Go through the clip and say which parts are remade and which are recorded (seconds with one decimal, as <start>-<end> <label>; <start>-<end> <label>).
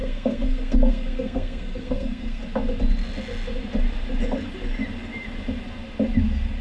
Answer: 0.0-2.4 remade; 2.4-6.6 recorded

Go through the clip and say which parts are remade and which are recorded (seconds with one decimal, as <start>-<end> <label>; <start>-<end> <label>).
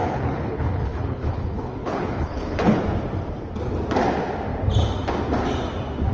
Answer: 0.0-2.8 remade; 2.8-6.1 recorded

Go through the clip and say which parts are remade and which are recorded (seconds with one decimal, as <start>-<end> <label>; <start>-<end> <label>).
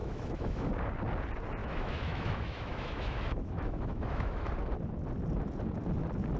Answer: 0.0-0.7 remade; 0.7-1.6 recorded; 1.6-4.5 remade; 4.5-6.4 recorded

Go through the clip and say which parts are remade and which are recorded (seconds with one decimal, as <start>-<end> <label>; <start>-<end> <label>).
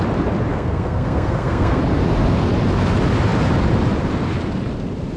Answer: 0.0-0.5 recorded; 0.5-1.8 remade; 1.8-5.2 recorded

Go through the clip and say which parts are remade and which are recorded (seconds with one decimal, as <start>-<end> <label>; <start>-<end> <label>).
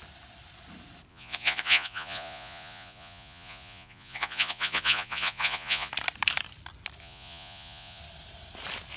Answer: 0.0-1.1 recorded; 1.1-5.9 remade; 5.9-7.0 recorded; 7.0-8.0 remade; 8.0-9.0 recorded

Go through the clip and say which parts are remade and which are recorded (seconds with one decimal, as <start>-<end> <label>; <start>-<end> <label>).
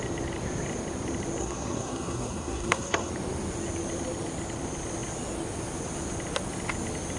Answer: 0.0-1.4 recorded; 1.4-3.1 remade; 3.1-7.2 recorded